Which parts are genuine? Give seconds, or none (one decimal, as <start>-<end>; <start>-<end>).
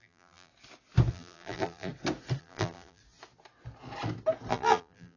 0.5-1.1; 1.9-2.4; 3.0-4.5